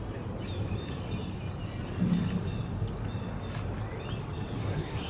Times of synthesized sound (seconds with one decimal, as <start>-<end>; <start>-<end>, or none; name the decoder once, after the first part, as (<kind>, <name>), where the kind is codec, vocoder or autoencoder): 4.6-5.1 (codec, SNAC)